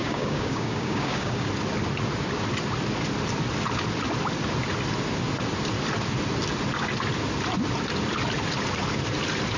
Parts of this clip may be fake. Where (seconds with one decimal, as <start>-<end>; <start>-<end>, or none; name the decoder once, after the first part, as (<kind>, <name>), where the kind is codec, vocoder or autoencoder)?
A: 0.0-1.5 (codec, DAC)